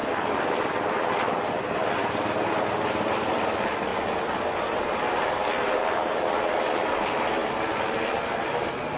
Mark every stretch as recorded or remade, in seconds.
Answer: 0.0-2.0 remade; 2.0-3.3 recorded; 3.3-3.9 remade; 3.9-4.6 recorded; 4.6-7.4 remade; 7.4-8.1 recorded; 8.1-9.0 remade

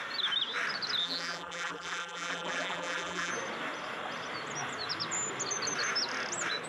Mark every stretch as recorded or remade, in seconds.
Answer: 0.0-1.0 recorded; 1.0-3.3 remade; 3.3-6.7 recorded

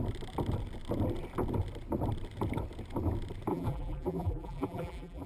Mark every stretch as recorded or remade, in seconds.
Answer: 0.0-3.5 recorded; 3.5-5.3 remade

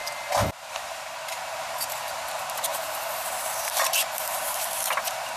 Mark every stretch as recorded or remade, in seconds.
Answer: 0.0-5.4 remade